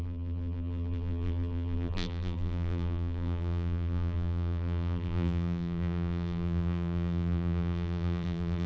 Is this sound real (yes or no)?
no